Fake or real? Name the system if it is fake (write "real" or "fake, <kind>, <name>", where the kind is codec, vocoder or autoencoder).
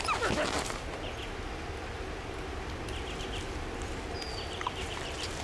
real